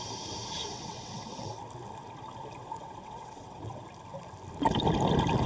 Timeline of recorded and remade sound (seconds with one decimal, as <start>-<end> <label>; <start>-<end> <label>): 0.0-0.7 recorded; 0.7-1.5 remade; 1.5-2.6 recorded; 2.6-3.8 remade; 3.8-5.5 recorded